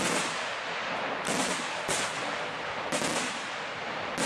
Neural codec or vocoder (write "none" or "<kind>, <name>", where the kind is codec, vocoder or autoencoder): none